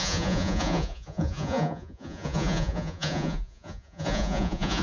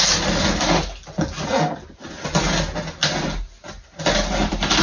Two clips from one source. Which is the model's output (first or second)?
first